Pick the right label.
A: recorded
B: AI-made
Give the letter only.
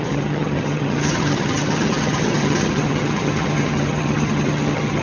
B